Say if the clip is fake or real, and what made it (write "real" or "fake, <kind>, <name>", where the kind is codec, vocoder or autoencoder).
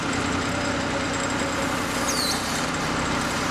real